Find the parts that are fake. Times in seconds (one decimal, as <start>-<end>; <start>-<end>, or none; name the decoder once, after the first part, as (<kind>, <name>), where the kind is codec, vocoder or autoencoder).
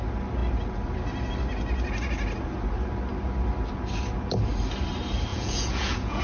5.3-6.2 (vocoder, Vocos)